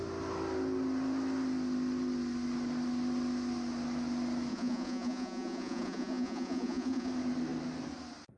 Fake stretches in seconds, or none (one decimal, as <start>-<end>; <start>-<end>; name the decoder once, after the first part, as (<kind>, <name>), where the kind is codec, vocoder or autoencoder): 4.5-7.1 (vocoder, Vocos)